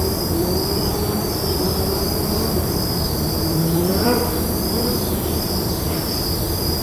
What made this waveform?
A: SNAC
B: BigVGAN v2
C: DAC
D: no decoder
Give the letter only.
B